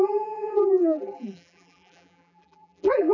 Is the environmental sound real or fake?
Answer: fake